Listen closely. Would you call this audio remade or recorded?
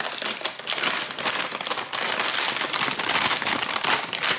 recorded